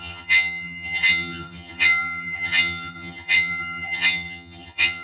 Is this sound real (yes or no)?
no